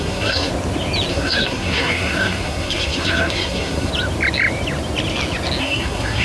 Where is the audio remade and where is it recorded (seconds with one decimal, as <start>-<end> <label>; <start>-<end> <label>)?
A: 0.0-0.5 remade; 0.5-1.1 recorded; 1.1-3.9 remade; 3.9-5.6 recorded; 5.6-6.2 remade